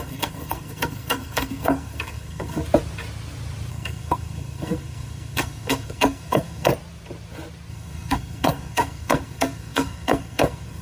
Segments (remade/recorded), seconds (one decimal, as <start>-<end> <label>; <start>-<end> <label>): 0.0-2.6 remade; 2.6-3.7 recorded; 3.7-6.7 remade; 6.7-7.7 recorded; 7.7-10.8 remade